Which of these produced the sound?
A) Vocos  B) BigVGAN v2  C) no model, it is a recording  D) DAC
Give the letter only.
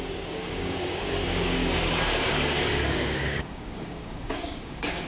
D